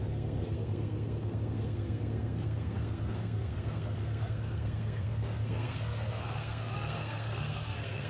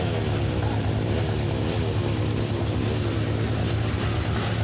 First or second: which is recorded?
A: second